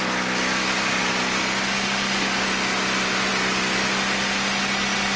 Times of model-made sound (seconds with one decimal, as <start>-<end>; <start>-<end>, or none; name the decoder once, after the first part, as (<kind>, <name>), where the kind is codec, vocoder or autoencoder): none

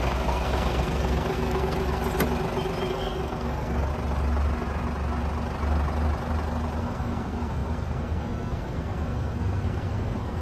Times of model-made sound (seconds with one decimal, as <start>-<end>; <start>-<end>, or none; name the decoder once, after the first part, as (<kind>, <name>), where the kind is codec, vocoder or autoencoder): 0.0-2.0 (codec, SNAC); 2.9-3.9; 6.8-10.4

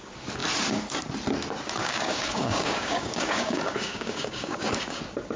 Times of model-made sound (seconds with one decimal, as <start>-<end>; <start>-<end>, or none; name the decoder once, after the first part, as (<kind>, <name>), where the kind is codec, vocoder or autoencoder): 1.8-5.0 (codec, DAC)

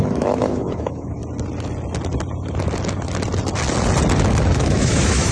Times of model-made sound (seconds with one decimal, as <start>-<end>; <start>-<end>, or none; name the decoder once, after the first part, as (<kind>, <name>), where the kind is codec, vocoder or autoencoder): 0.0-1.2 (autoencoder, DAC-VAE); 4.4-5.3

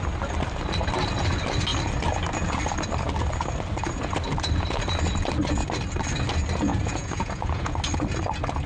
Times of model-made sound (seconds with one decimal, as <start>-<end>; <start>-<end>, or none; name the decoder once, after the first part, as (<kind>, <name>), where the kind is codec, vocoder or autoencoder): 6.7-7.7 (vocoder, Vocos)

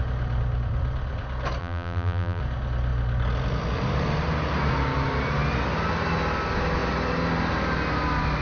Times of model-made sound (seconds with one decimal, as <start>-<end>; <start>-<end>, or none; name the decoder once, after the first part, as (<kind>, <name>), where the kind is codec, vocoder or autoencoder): 1.6-2.4 (vocoder, BigVGAN v2)